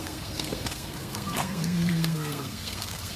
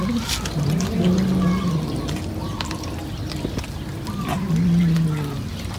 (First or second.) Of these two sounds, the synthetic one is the first